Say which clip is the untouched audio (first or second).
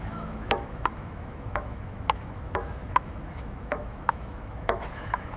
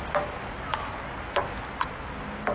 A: second